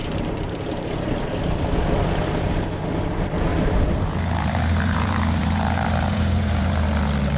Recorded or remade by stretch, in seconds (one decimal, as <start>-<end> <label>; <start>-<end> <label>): 0.0-1.2 remade; 1.2-3.5 recorded; 3.5-7.0 remade; 7.0-7.4 recorded